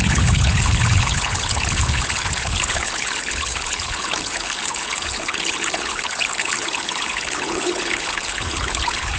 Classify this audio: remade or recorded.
remade